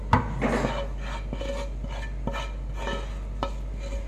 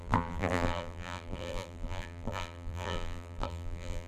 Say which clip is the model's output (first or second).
second